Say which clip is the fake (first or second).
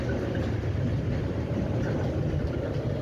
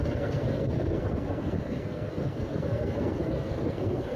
second